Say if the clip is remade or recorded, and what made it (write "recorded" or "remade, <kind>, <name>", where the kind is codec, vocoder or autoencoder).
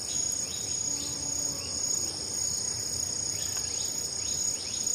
recorded